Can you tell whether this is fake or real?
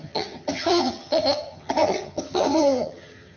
fake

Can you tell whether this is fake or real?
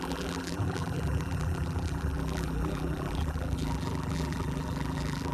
fake